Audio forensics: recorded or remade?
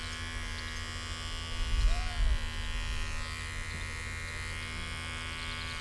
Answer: recorded